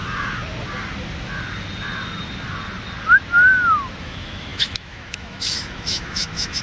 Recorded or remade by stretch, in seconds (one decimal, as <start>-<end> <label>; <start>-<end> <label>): 0.0-4.0 recorded; 4.0-6.6 remade